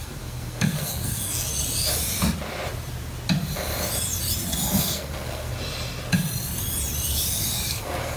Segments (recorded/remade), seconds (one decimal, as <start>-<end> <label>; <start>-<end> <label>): 0.0-1.5 remade; 1.5-4.8 recorded; 4.8-5.5 remade; 5.5-7.7 recorded; 7.7-8.2 remade